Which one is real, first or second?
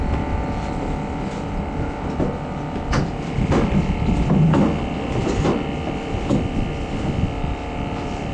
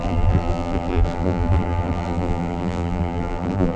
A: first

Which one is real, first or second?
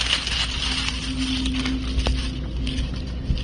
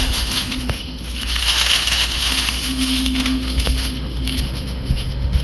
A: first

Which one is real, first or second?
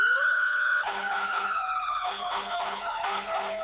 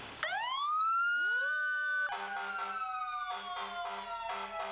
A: second